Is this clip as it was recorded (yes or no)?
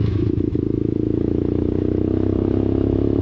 no